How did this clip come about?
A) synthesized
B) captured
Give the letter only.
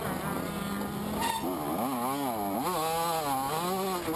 B